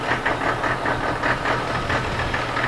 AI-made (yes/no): no